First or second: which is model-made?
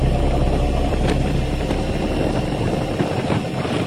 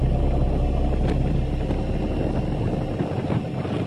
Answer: first